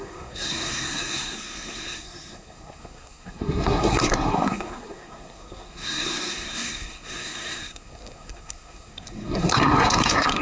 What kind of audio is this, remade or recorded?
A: remade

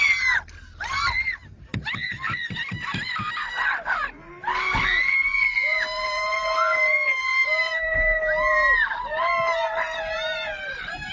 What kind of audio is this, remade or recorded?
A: recorded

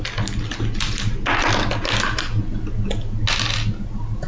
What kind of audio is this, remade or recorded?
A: recorded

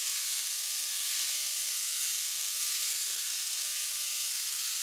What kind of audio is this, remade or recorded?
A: remade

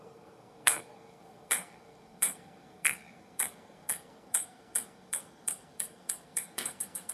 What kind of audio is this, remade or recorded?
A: remade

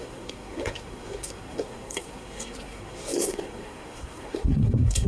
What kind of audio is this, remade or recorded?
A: remade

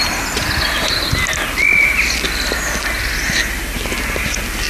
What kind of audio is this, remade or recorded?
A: recorded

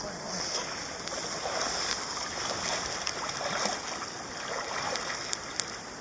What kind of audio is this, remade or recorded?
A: recorded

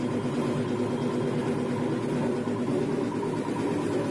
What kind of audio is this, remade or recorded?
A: recorded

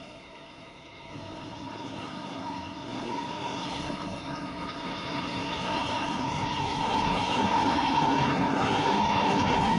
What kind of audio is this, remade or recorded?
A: remade